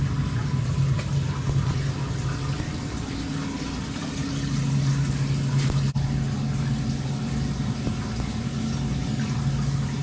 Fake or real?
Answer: real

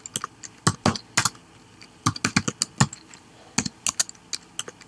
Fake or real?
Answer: real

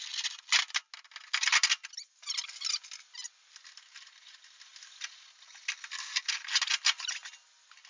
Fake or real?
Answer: real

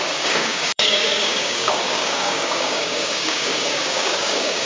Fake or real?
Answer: fake